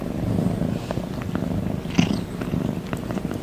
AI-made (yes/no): no